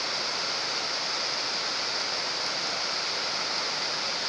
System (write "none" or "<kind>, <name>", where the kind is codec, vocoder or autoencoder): none